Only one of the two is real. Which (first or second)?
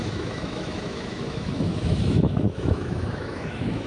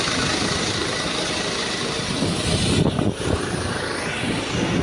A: second